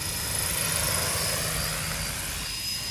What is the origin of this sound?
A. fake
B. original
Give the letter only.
B